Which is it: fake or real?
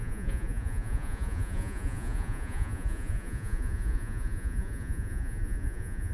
fake